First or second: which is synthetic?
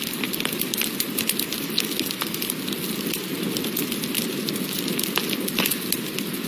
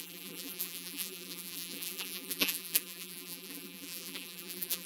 second